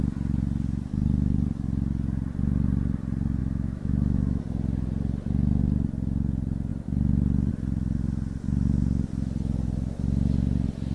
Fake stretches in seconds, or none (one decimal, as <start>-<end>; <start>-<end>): 3.4-4.4